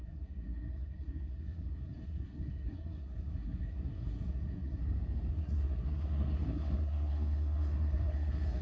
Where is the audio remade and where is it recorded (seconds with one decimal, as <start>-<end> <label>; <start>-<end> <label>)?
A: 0.0-4.8 remade; 4.8-5.3 recorded; 5.3-8.6 remade